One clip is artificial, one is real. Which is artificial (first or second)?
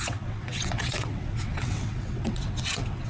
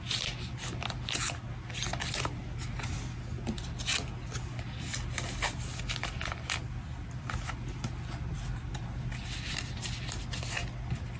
first